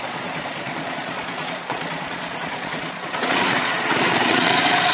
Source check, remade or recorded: remade